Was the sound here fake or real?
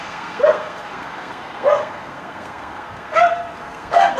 fake